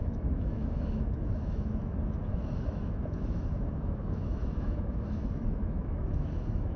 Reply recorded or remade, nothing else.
remade